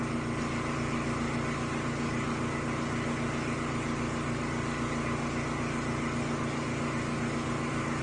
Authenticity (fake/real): real